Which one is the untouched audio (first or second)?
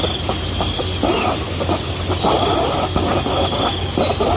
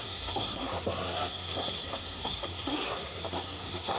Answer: first